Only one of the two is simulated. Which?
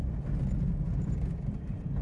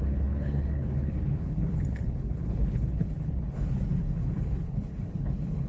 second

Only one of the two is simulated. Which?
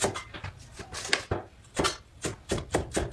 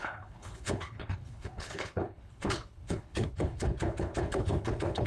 second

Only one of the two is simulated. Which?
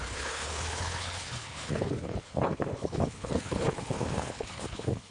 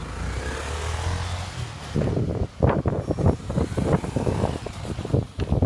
first